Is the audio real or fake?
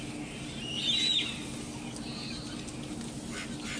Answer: real